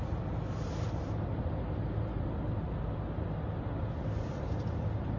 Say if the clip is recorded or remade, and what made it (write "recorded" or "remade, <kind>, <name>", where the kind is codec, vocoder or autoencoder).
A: recorded